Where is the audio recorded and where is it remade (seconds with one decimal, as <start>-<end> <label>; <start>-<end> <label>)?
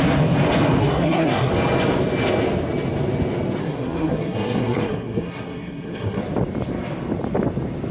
0.0-0.8 recorded; 0.8-1.5 remade; 1.5-3.6 recorded; 3.6-6.2 remade; 6.2-7.9 recorded